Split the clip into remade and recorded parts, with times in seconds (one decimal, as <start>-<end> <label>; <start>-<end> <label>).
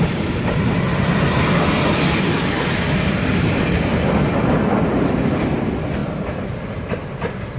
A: 0.0-7.6 recorded